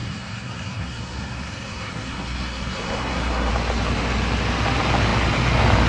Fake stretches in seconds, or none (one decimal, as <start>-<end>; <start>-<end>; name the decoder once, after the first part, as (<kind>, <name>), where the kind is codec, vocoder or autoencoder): 0.0-3.5 (codec, SNAC)

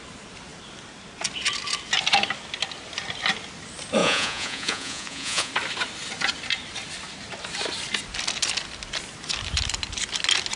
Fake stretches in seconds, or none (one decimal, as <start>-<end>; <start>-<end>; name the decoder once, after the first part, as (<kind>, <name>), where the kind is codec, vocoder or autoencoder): 4.0-5.5 (vocoder, Vocos)

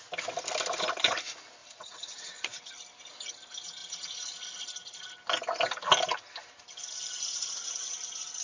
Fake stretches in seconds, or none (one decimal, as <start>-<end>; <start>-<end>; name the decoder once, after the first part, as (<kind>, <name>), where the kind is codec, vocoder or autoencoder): 1.6-2.7 (vocoder, WaveNeXt)

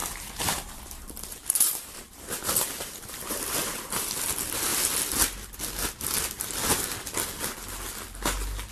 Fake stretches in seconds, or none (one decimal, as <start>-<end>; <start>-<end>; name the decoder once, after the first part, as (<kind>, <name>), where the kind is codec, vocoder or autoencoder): 0.0-4.2 (vocoder, BigVGAN v2)